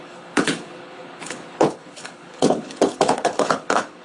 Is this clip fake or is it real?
fake